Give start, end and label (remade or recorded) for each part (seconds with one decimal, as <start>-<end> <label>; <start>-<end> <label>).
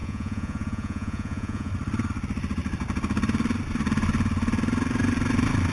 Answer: 0.0-1.7 remade; 1.7-5.7 recorded